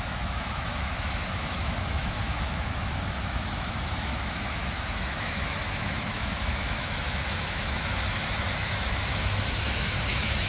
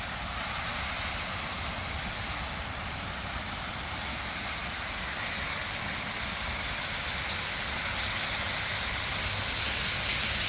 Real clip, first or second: second